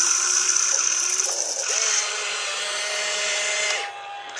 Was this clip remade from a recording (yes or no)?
no